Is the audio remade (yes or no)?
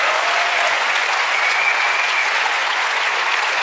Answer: yes